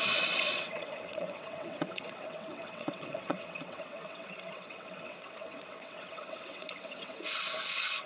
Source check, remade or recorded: remade